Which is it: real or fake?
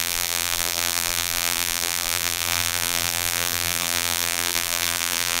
fake